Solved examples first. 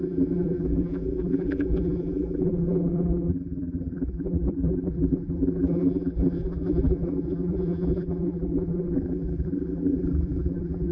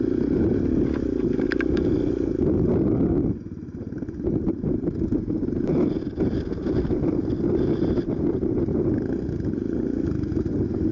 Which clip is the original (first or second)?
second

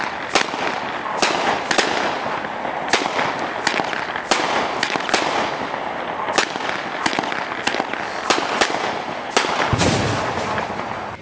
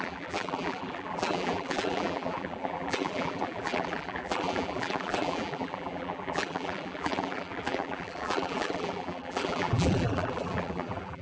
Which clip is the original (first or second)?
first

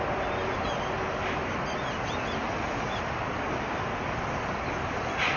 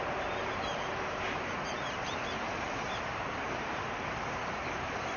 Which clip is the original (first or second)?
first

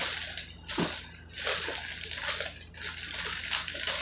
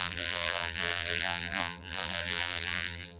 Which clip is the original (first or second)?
first